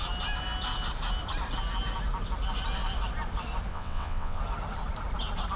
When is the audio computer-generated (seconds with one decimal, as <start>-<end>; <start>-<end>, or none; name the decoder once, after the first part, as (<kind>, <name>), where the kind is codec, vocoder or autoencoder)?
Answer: 3.7-4.4 (vocoder, WaveNeXt)